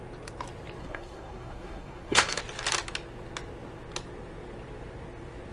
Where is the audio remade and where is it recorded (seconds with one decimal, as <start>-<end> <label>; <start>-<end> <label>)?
0.0-0.8 recorded; 0.8-2.4 remade; 2.4-5.5 recorded